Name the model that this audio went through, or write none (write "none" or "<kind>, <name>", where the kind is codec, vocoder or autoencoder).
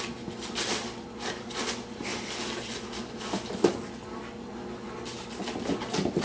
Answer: none